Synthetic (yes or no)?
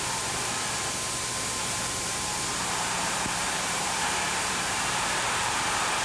yes